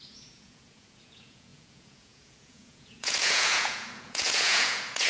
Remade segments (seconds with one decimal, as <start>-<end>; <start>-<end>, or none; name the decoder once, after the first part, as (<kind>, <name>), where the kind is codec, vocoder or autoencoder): 0.0-5.1 (vocoder, Vocos)